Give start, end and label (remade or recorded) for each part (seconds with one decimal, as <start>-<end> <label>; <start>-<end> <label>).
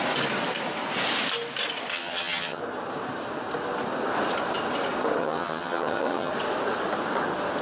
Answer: 0.0-1.9 recorded; 1.9-2.6 remade; 2.6-5.2 recorded; 5.2-6.3 remade; 6.3-7.6 recorded